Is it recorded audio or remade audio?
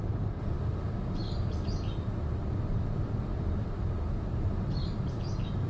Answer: remade